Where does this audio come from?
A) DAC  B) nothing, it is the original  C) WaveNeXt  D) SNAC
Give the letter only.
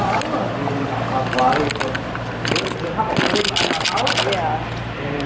B